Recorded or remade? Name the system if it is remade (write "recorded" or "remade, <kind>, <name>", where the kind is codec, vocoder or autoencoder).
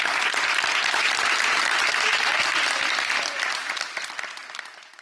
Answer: recorded